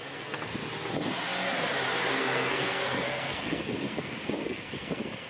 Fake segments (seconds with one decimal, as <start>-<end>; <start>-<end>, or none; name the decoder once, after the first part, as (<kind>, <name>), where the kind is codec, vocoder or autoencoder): 0.0-0.5 (codec, SNAC); 2.1-5.3